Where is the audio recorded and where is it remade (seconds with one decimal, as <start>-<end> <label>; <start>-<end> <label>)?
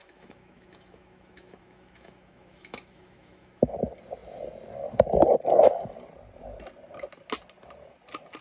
0.0-3.7 remade; 3.7-8.4 recorded